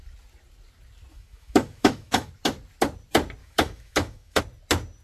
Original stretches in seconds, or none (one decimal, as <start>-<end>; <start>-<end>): 0.0-1.1; 2.3-3.4; 4.4-5.0